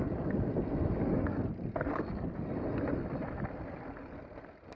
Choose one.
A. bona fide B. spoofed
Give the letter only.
A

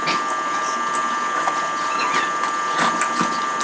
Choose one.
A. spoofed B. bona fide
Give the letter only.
B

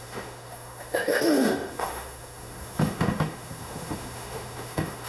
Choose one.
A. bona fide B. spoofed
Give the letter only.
B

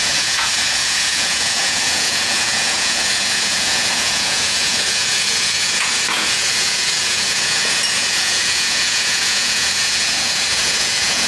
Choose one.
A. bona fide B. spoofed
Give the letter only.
B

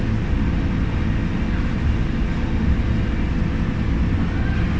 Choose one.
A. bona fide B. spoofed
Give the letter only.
A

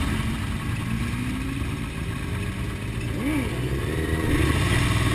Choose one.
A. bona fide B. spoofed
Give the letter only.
A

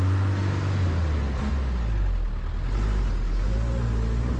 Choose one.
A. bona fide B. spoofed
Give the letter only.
A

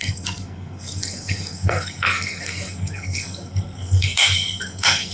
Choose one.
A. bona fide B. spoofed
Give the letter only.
B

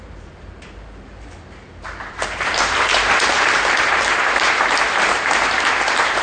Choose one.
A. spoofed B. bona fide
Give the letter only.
A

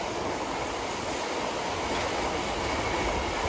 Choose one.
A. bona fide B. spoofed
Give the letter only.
A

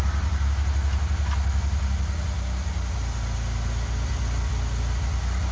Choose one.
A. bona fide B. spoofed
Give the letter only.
A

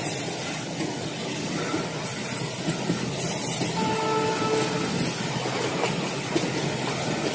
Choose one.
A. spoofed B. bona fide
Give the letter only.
B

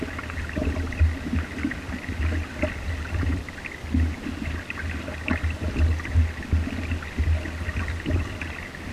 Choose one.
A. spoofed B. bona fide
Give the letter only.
B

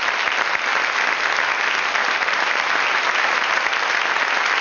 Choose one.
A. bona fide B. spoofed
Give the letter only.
A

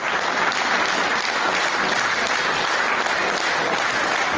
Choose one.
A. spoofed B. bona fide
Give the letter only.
B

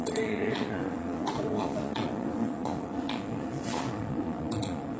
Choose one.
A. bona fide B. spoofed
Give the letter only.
B